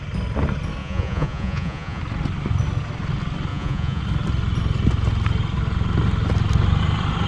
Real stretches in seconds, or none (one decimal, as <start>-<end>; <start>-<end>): 0.0-0.8; 2.0-3.5; 4.0-7.3